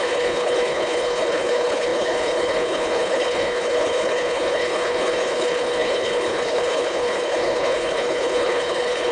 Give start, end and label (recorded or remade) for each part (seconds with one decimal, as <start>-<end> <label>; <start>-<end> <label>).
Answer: 0.0-9.1 remade